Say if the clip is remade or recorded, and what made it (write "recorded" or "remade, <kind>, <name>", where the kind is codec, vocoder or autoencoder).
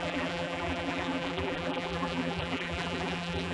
remade, vocoder, BigVGAN v2